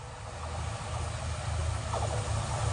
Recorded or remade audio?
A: recorded